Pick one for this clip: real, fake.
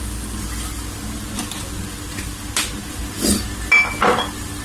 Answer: real